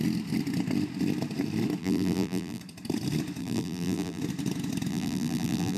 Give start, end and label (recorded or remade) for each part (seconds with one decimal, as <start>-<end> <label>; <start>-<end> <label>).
0.0-1.8 recorded; 1.8-2.6 remade; 2.6-3.4 recorded; 3.4-4.2 remade; 4.2-4.9 recorded; 4.9-5.8 remade